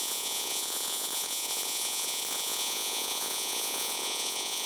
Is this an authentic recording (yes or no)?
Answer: no